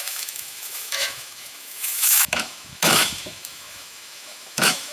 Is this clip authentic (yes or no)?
no